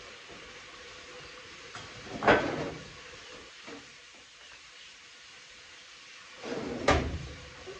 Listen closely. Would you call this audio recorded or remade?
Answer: recorded